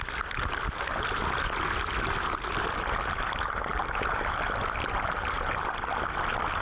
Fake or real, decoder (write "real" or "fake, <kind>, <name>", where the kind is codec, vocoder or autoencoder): real